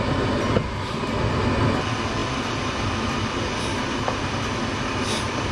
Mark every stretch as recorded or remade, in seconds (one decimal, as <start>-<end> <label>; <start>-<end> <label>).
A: 0.0-5.5 recorded